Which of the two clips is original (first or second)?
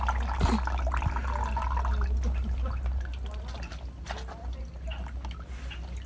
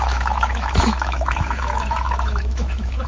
first